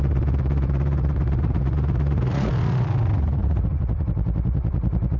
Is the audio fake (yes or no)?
yes